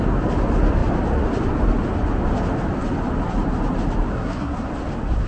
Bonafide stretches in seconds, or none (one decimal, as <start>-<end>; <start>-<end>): 0.0-4.1; 4.7-5.3